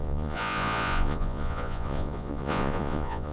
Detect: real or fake fake